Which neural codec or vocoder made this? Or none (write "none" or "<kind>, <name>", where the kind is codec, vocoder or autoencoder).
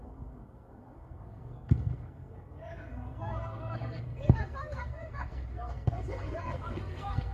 codec, SNAC